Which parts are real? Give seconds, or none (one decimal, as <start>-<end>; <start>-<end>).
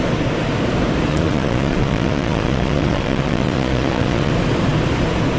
0.0-1.1; 4.3-5.4